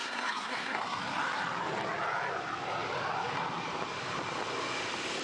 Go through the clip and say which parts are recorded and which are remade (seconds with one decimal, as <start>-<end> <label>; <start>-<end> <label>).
0.0-1.0 remade; 1.0-5.2 recorded